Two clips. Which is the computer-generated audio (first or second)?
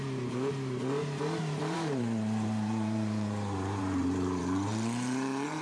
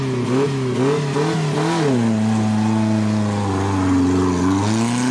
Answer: first